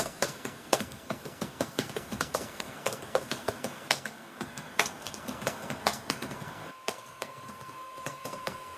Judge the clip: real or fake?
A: fake